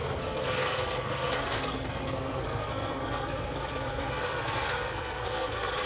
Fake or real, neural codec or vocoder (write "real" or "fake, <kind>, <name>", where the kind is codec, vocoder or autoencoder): fake, codec, SNAC